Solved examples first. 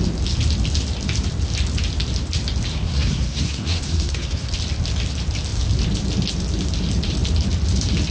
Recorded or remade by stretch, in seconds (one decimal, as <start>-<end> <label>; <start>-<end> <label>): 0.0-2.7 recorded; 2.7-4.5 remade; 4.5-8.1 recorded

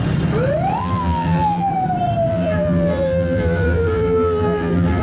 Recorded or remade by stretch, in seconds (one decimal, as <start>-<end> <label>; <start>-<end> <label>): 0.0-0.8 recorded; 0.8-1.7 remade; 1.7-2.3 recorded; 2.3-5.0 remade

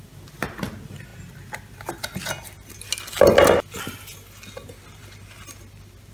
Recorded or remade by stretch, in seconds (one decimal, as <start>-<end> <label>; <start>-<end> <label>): 0.0-6.1 recorded

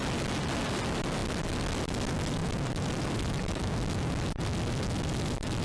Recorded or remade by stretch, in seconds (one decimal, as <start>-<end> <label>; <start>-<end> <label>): 0.0-2.4 recorded; 2.4-4.1 remade; 4.1-5.6 recorded

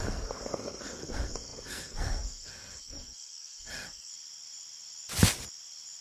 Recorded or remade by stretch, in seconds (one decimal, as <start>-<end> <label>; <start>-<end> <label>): 0.0-4.1 remade; 4.1-6.0 recorded